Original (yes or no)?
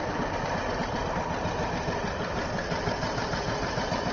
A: yes